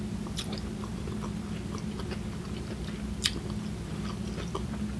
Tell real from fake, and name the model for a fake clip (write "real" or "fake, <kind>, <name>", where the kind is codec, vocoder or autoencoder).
real